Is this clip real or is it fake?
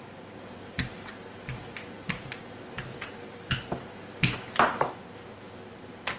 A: real